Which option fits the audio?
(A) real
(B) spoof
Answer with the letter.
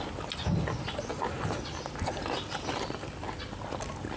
A